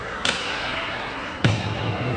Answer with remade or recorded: remade